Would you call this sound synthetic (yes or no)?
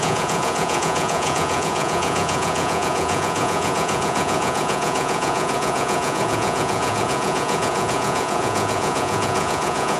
yes